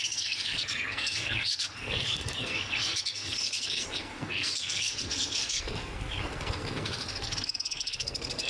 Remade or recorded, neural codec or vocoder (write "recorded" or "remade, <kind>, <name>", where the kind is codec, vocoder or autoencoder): remade, codec, SNAC